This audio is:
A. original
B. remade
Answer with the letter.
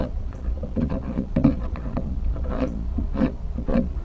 B